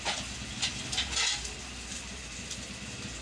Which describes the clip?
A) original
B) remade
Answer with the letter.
A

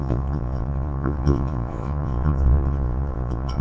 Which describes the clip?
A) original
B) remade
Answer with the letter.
B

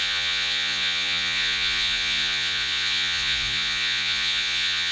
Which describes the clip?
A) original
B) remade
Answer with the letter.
B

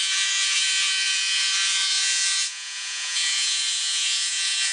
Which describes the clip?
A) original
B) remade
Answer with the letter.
B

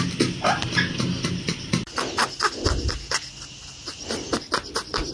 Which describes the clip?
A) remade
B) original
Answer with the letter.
B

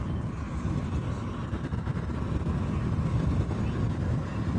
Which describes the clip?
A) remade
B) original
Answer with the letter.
B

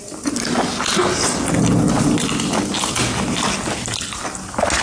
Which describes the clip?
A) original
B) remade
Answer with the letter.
A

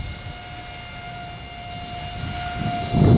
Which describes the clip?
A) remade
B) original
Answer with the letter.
B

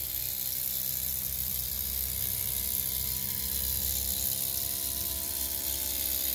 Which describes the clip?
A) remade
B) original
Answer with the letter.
B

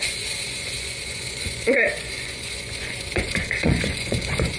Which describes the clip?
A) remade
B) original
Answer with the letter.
A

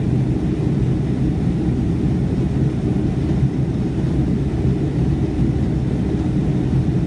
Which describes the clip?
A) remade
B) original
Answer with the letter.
B